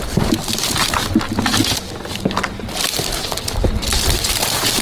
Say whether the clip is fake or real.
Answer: real